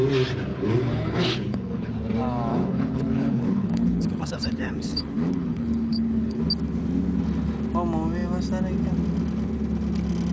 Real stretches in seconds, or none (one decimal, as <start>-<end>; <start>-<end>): 0.0-0.5; 1.9-2.5; 6.4-10.3